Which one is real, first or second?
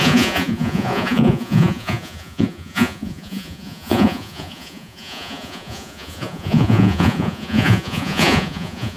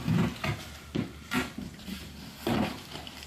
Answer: second